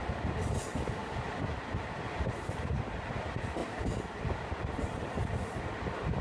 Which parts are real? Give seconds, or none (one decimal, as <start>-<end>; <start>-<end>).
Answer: 0.0-1.0; 1.6-3.6; 5.6-6.2